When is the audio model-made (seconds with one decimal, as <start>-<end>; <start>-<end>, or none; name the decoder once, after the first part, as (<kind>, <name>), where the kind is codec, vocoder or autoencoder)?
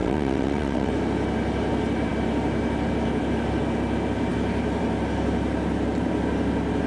0.0-0.9 (vocoder, WaveNeXt)